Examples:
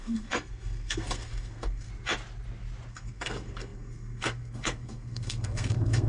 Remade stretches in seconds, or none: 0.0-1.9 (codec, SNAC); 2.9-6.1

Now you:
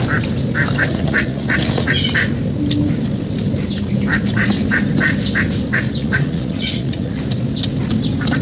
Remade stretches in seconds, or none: 0.9-1.9 (vocoder, Vocos); 6.0-7.2

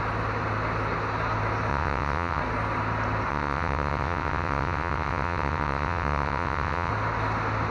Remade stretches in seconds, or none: 1.7-2.4 (vocoder, WaveNeXt); 3.3-6.9

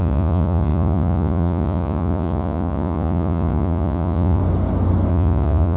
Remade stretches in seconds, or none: 0.0-4.4 (vocoder, Vocos); 5.1-5.8